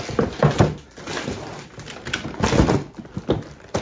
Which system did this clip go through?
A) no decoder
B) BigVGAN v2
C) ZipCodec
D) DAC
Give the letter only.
A